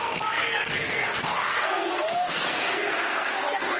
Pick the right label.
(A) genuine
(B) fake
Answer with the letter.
B